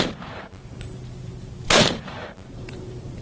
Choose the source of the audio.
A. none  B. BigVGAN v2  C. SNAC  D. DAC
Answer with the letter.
B